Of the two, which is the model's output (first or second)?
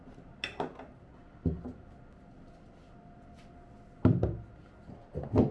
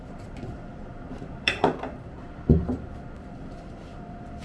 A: second